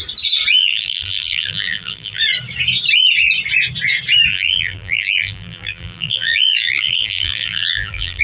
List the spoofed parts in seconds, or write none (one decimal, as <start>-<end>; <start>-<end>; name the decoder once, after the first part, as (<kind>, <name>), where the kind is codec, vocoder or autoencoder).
0.6-2.2 (vocoder, BigVGAN v2); 4.3-8.2